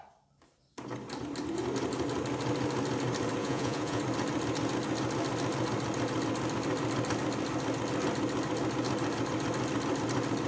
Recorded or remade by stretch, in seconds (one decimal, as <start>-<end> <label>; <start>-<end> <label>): 0.0-3.4 recorded; 3.4-4.0 remade; 4.0-10.5 recorded